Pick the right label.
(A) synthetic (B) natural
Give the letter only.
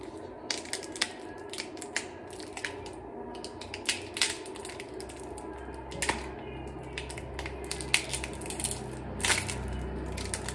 B